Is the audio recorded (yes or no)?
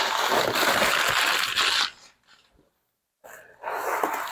yes